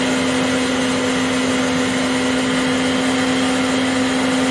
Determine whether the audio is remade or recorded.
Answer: recorded